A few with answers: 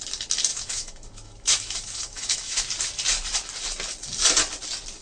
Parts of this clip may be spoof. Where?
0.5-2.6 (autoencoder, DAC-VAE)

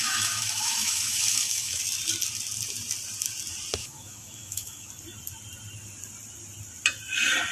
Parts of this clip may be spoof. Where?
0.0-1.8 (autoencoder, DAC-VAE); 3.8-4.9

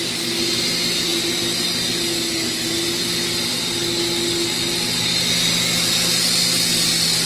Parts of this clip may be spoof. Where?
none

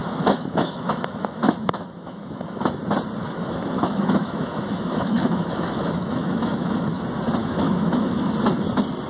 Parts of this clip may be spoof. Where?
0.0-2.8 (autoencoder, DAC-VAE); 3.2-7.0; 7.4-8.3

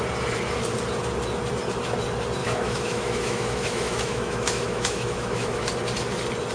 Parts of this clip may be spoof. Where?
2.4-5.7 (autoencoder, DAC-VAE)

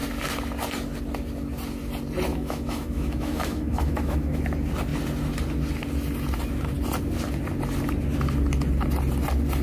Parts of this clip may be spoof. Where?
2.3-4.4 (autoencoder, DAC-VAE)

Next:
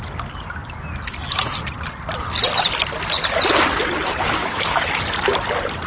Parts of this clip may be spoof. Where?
4.4-5.0 (autoencoder, DAC-VAE)